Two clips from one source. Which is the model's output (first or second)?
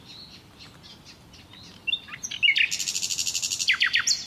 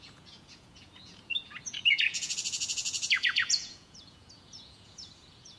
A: second